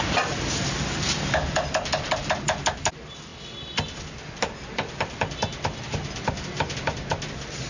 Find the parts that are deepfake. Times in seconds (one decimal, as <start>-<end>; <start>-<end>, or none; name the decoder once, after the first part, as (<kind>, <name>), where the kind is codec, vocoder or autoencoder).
none